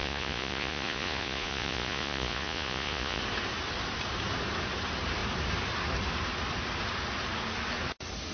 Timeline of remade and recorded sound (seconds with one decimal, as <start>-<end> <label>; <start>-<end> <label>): 0.0-3.2 remade; 3.2-8.3 recorded